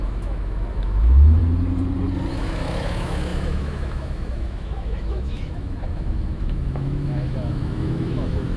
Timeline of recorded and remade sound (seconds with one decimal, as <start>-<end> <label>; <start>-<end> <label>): 0.0-1.4 remade; 1.4-2.3 recorded; 2.3-8.6 remade